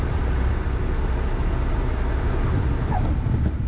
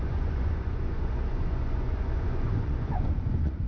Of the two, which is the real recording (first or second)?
first